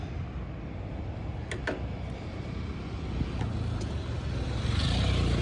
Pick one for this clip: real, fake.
real